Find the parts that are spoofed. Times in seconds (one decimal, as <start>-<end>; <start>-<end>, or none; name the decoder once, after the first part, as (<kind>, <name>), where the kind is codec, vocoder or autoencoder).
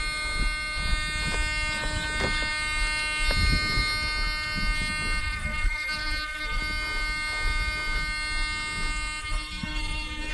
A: 5.2-6.6 (codec, SNAC); 9.2-10.3